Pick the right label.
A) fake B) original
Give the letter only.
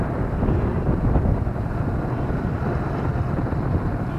A